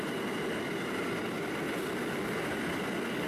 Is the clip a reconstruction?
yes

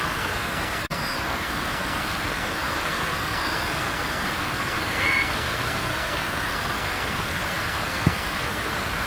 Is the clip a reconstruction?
yes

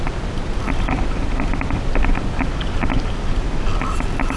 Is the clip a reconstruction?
no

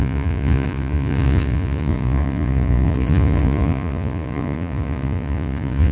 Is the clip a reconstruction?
yes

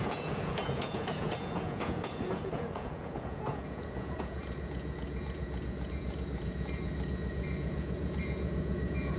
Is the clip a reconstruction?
yes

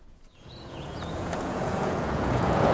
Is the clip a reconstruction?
yes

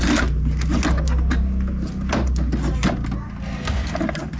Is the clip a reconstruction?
no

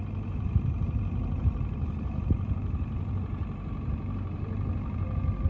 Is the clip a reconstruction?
yes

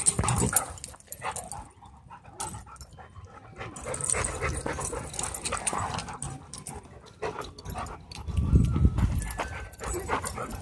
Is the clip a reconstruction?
no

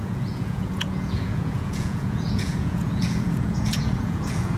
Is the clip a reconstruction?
yes